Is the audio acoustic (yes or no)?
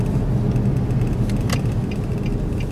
yes